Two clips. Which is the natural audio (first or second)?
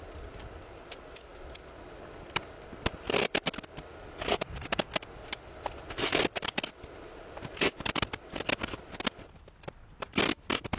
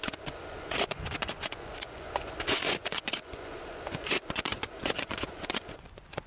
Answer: first